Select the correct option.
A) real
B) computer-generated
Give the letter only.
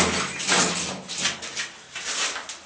A